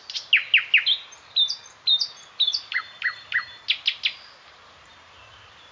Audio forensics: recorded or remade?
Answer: recorded